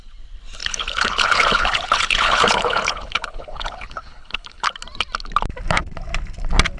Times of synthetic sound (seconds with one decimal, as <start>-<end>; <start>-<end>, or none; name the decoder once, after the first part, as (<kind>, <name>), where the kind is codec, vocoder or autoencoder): 0.6-4.7 (codec, HILCodec)